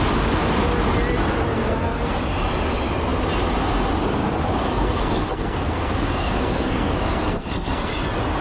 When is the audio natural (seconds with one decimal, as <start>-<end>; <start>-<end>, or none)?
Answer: 0.0-1.5; 2.2-4.6; 7.9-8.4